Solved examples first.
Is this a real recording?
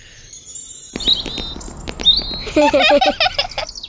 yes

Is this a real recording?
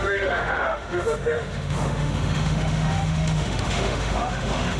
no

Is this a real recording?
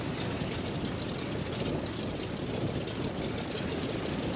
yes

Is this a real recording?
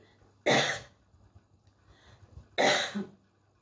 yes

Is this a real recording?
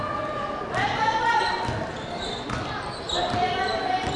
yes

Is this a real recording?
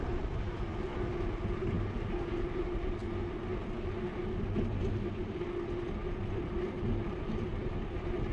yes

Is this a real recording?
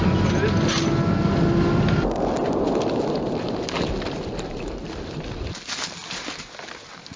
yes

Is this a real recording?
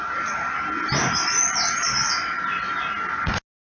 yes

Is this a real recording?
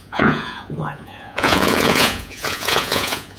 no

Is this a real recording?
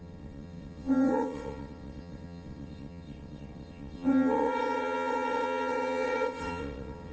no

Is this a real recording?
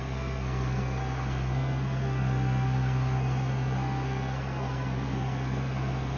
no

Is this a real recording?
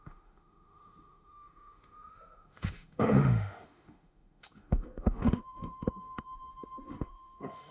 no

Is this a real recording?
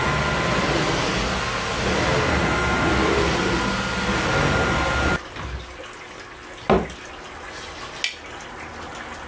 yes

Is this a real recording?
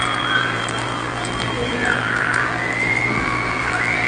no